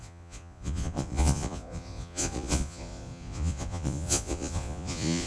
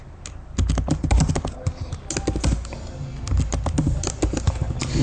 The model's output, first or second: first